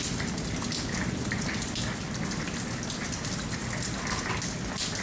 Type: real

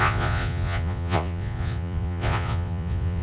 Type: fake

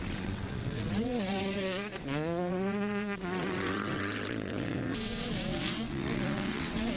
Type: fake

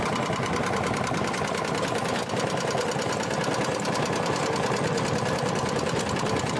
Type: real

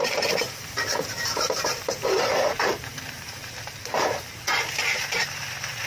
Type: fake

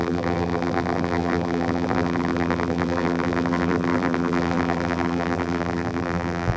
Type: fake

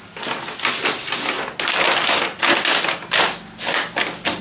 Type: real